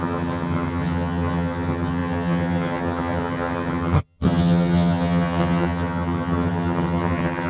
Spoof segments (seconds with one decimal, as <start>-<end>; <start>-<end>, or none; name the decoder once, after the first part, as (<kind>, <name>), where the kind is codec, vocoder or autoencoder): 0.0-7.5 (vocoder, HiFi-GAN)